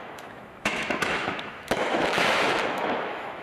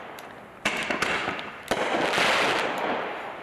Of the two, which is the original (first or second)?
second